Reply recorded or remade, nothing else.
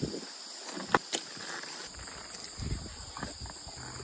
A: recorded